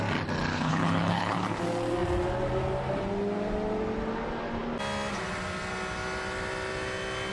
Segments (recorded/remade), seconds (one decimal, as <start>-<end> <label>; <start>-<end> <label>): 0.0-0.5 recorded; 0.5-1.6 remade; 1.6-7.3 recorded